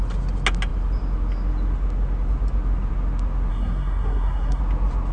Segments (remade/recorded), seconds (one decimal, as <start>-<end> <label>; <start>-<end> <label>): 0.0-3.5 recorded; 3.5-4.6 remade; 4.6-5.1 recorded